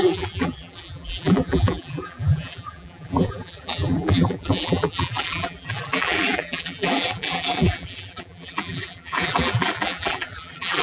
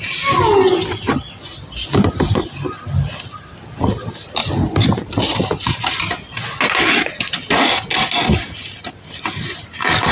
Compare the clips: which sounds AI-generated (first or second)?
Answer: first